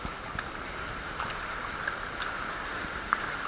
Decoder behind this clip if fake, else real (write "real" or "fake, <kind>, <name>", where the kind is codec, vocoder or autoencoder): real